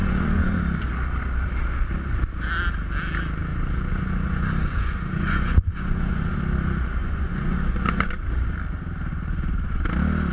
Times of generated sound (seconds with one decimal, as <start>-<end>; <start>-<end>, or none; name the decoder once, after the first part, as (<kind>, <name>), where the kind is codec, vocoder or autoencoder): 0.0-0.6 (vocoder, Vocos); 3.5-6.4; 7.0-8.1; 9.1-9.8